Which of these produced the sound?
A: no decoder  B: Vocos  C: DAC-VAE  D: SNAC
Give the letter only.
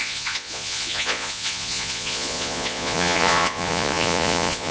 B